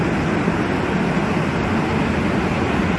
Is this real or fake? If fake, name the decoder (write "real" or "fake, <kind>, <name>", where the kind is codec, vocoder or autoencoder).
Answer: real